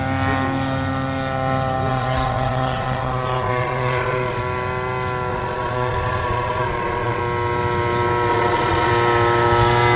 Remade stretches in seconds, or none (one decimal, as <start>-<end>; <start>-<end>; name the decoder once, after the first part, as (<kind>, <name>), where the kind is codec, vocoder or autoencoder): 1.9-4.4 (vocoder, Vocos); 5.3-7.2; 8.3-8.9